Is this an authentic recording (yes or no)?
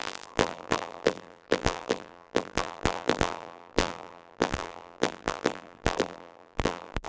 no